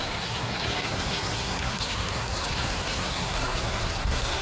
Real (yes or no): no